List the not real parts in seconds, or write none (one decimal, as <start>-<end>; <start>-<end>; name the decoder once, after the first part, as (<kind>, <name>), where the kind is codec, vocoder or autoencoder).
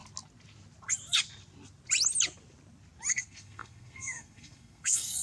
3.1-5.2 (codec, SNAC)